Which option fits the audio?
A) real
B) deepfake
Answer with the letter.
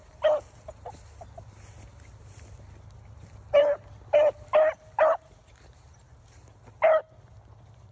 A